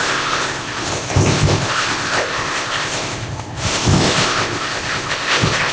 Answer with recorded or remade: remade